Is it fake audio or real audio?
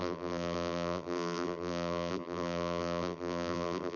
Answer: fake